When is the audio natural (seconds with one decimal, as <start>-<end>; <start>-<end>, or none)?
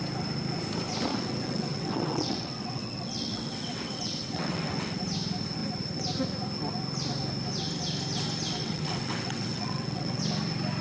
0.0-1.1; 5.0-8.6; 10.2-10.8